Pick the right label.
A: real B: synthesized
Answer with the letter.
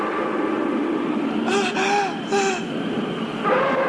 A